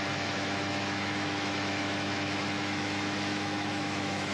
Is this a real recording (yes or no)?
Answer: no